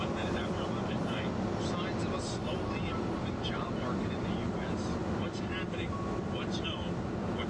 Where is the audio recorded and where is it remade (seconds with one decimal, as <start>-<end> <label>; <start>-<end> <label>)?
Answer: 0.0-7.5 recorded